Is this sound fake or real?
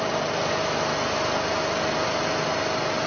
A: real